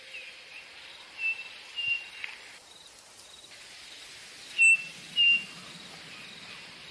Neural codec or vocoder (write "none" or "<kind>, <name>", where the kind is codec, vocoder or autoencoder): none